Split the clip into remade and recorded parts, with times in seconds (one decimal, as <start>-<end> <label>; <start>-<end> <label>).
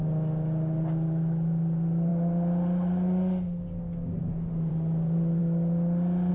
0.0-6.3 recorded